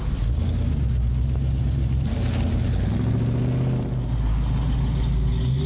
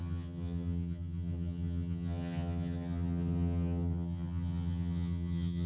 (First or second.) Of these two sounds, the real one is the first